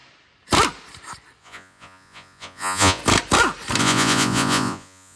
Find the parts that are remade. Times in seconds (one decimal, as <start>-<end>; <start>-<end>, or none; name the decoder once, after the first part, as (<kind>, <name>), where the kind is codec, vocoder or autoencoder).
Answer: 1.4-3.0 (vocoder, Vocos); 3.8-5.2